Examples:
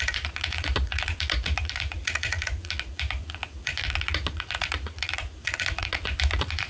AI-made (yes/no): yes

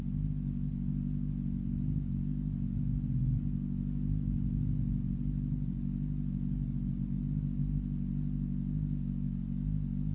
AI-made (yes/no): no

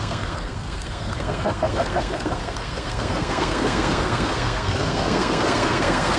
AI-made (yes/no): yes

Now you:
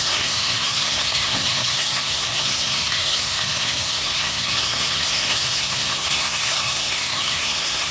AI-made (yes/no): yes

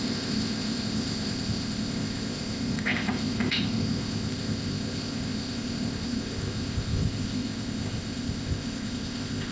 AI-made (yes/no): yes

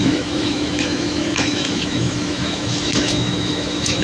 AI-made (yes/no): yes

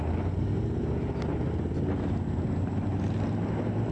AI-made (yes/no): no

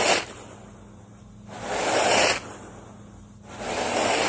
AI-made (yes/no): no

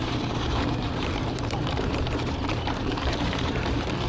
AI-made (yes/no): yes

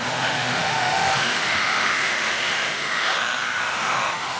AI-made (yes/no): yes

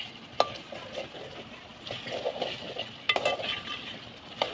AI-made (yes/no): no